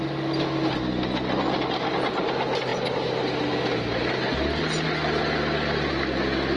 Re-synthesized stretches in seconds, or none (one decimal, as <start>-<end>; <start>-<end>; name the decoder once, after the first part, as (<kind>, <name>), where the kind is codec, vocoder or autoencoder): none